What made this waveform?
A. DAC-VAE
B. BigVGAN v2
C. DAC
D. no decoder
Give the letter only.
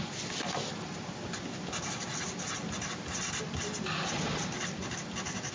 B